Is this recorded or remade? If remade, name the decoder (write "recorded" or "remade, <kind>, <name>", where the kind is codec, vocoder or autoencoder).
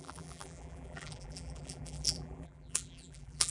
remade, vocoder, BigVGAN v2